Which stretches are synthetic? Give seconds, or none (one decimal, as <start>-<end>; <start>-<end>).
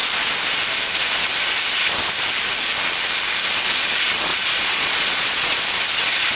4.3-5.6